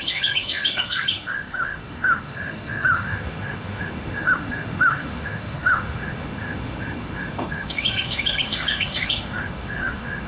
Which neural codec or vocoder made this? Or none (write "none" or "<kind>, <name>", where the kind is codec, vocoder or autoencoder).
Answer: autoencoder, DAC-VAE